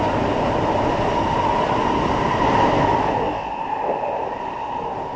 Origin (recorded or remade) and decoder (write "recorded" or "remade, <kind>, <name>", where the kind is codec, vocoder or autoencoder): recorded